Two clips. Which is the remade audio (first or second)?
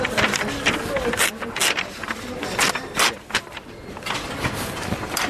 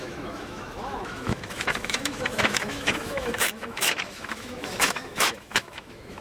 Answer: second